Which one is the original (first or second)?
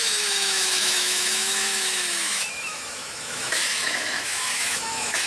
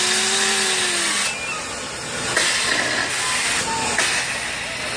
second